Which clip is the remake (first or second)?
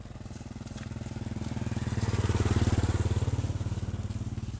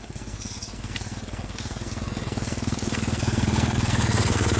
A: second